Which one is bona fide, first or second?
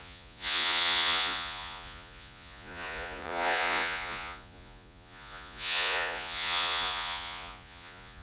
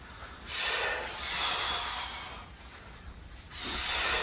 second